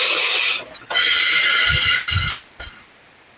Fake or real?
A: real